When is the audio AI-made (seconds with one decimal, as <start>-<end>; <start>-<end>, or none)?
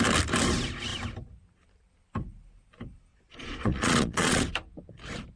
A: 3.1-4.4